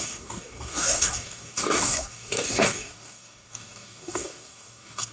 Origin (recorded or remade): remade